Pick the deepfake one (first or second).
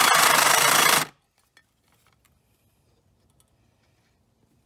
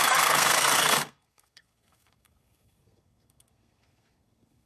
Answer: second